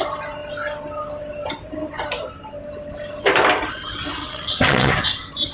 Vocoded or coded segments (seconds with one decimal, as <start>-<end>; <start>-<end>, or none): 4.2-4.9

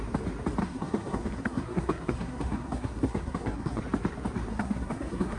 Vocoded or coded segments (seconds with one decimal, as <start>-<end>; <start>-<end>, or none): 0.6-3.8; 4.5-5.4